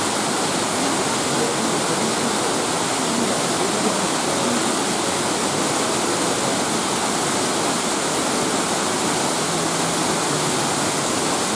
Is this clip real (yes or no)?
yes